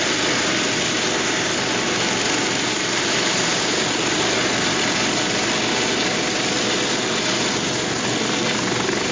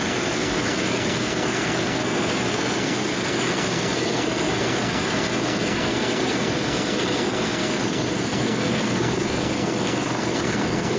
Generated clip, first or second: second